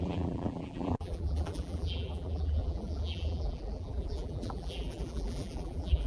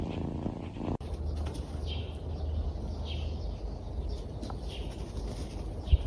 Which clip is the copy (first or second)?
first